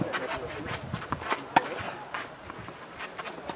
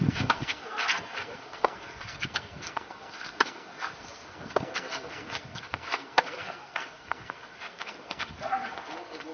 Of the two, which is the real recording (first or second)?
first